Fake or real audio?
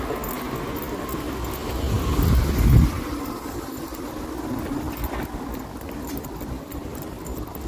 real